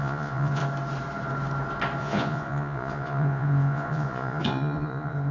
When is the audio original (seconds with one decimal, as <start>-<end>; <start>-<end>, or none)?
0.6-2.0